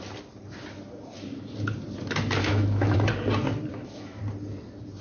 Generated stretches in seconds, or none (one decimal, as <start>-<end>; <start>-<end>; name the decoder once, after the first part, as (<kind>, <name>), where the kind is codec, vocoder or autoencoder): 2.4-3.1 (autoencoder, DAC-VAE); 3.7-4.2